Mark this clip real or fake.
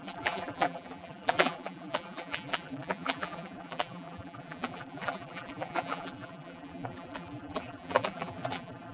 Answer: fake